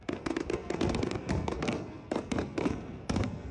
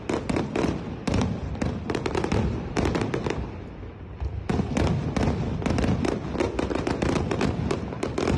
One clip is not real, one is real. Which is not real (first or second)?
first